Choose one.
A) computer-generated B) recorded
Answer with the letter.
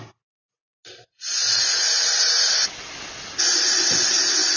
B